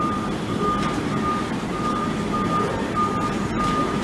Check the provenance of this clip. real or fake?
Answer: real